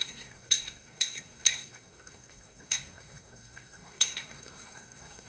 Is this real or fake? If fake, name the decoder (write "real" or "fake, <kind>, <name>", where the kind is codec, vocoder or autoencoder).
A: fake, codec, SNAC